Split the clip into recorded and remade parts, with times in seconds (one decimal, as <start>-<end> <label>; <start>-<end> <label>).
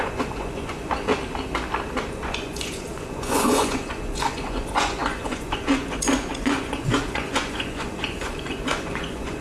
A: 0.0-1.1 remade; 1.1-2.1 recorded; 2.1-9.4 remade